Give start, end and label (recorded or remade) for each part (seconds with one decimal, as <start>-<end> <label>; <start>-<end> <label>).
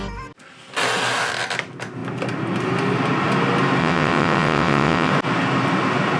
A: 0.0-3.8 recorded; 3.8-5.1 remade; 5.1-6.2 recorded